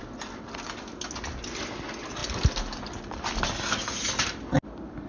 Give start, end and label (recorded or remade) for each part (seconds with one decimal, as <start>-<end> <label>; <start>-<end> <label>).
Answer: 0.0-5.1 recorded